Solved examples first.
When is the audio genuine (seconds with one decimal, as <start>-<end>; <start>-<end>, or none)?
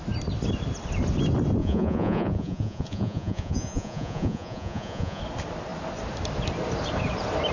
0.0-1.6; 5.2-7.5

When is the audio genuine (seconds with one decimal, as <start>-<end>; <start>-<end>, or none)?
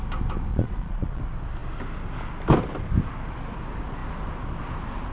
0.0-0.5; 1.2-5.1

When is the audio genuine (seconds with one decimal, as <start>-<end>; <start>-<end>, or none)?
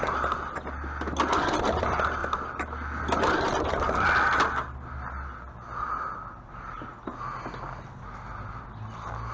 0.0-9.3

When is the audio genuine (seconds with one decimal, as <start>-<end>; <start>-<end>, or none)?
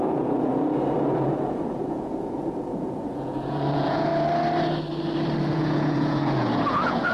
0.5-1.1; 4.1-5.5